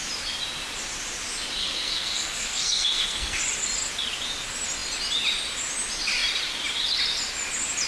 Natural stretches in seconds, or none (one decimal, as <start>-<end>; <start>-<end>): 0.0-1.6; 3.4-7.9